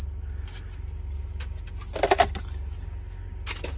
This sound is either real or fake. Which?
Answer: real